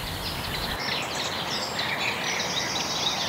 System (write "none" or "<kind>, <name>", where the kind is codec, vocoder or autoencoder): none